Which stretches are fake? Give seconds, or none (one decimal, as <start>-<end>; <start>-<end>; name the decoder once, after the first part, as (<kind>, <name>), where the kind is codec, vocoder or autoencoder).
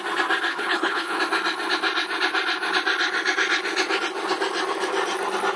0.5-1.2 (codec, HILCodec)